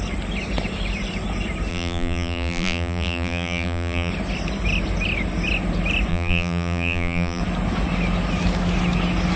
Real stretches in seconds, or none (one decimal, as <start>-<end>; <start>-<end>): 0.0-1.7; 4.1-6.1; 7.4-9.4